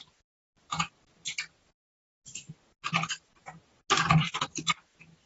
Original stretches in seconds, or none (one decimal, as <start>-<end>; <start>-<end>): 0.0-5.3